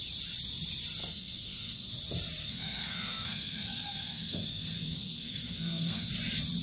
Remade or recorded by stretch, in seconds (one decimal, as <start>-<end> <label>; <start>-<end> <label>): 0.0-1.0 recorded; 1.0-1.9 remade; 1.9-2.4 recorded; 2.4-6.1 remade; 6.1-6.6 recorded